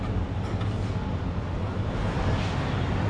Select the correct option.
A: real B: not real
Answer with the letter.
A